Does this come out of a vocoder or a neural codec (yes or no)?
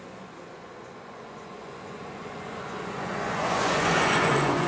yes